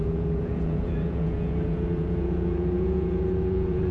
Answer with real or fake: fake